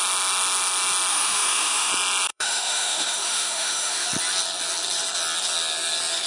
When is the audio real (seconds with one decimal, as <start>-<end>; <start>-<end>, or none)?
0.0-1.1; 1.9-2.3; 4.1-6.3